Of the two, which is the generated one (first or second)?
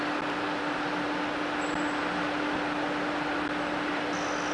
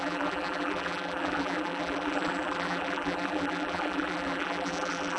second